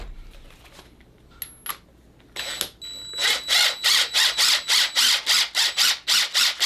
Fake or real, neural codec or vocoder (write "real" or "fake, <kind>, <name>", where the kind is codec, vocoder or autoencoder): real